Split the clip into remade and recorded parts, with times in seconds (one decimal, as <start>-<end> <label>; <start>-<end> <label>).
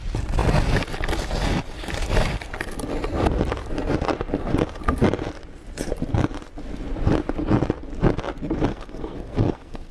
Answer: 0.0-8.7 recorded; 8.7-9.9 remade